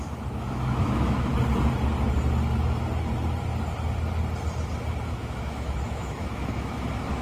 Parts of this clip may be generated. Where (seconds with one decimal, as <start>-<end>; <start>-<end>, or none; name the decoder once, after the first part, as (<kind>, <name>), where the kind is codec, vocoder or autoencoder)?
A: 0.0-1.3 (autoencoder, DAC-VAE); 5.0-7.2